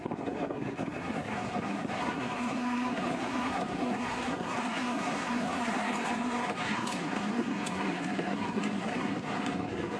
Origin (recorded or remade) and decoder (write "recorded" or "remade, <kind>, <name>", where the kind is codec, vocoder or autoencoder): remade, codec, SNAC